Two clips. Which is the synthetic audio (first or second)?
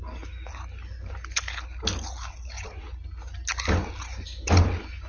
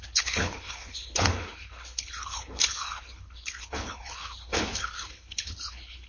second